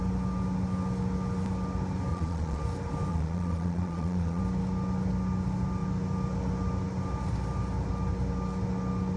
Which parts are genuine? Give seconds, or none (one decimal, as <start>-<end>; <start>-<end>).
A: 0.0-2.1; 2.6-3.1; 4.4-9.2